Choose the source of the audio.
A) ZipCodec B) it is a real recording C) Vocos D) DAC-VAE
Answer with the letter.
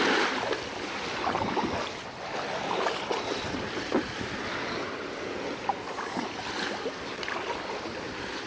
B